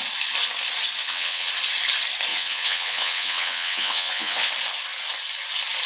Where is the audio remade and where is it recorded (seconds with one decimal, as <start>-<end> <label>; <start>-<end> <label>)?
0.0-1.0 recorded; 1.0-1.5 remade; 1.5-2.3 recorded; 2.3-4.5 remade; 4.5-5.9 recorded